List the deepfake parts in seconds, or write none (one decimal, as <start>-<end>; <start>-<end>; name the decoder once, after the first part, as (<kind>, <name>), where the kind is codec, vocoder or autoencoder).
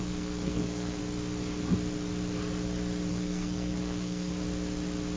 0.0-1.0 (codec, SNAC); 3.1-4.3